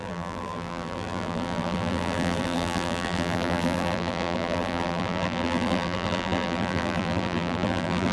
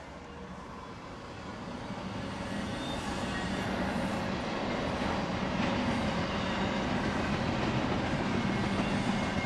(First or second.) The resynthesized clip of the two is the first